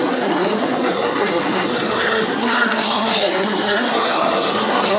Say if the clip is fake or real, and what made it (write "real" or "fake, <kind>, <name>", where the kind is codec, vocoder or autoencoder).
fake, codec, SNAC